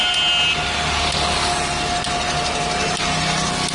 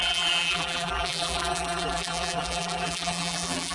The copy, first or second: second